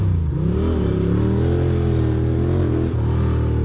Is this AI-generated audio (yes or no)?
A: no